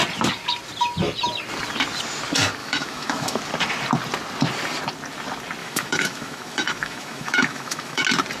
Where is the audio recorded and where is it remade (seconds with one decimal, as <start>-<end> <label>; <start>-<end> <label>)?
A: 0.0-2.6 recorded; 2.6-3.4 remade; 3.4-5.6 recorded; 5.6-8.0 remade; 8.0-8.4 recorded